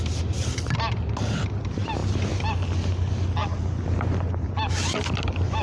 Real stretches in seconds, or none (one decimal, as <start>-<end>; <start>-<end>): 0.0-5.6